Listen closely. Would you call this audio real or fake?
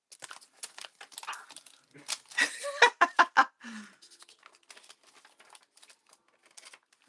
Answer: real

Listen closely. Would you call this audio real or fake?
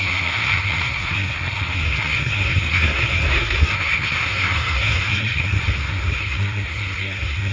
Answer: fake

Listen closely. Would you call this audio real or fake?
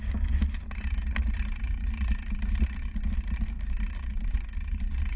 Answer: real